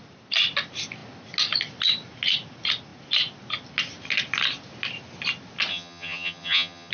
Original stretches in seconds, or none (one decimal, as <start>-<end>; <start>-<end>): 0.0-5.7